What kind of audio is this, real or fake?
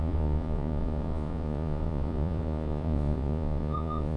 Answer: fake